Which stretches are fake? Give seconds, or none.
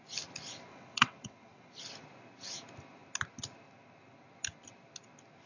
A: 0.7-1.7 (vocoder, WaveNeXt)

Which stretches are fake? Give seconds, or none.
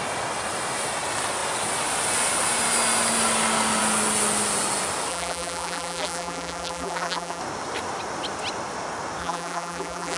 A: 5.1-7.4 (vocoder, BigVGAN v2); 9.2-10.2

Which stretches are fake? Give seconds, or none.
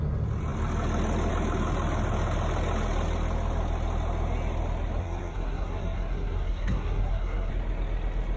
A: 5.0-7.5 (codec, SNAC)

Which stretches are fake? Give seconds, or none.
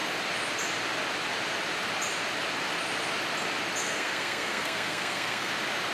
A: 3.8-5.5 (codec, SNAC)